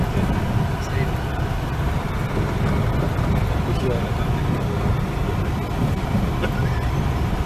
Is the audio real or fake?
real